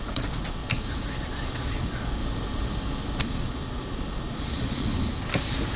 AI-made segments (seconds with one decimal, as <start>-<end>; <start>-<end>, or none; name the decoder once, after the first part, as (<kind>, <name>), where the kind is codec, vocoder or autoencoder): 0.0-0.6 (vocoder, Vocos); 1.2-2.2; 3.2-4.9